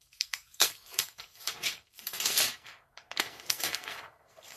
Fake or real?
fake